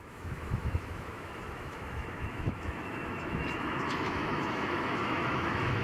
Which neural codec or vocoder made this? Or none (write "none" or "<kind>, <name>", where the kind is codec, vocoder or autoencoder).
autoencoder, DAC-VAE